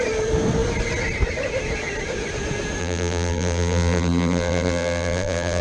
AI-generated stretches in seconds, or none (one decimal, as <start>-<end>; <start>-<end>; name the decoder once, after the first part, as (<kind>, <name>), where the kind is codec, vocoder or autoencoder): 2.8-5.6 (vocoder, BigVGAN v2)